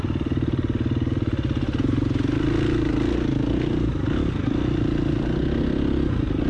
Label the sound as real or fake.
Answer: real